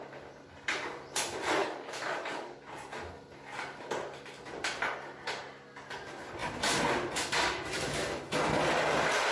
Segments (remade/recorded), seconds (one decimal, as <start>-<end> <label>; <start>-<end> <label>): 0.0-1.6 recorded; 1.6-2.7 remade; 2.7-9.3 recorded